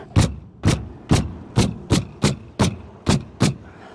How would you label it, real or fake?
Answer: real